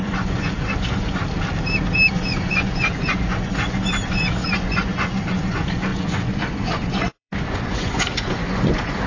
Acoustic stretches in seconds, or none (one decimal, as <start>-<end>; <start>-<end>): 1.2-2.1